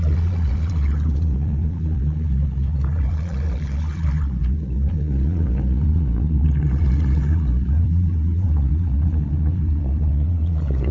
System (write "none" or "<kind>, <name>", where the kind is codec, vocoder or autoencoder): vocoder, Vocos